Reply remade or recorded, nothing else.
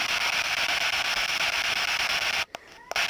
recorded